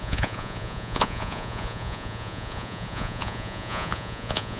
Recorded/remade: remade